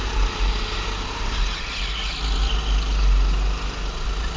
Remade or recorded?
recorded